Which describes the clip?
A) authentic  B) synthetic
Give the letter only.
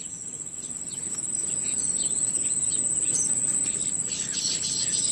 A